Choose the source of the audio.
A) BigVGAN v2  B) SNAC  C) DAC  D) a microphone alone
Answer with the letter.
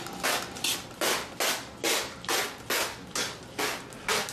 D